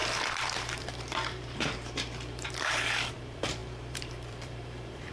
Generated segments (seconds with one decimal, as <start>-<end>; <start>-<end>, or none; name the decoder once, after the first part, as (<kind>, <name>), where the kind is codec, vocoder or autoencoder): 0.0-5.1 (vocoder, BigVGAN v2)